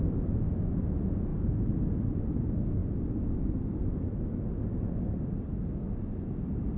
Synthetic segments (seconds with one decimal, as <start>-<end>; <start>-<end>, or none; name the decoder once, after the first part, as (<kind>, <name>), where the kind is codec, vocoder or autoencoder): none